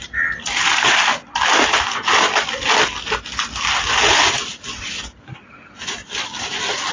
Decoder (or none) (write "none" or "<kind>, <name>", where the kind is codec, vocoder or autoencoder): none